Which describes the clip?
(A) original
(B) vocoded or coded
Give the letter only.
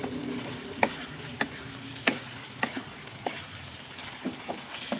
A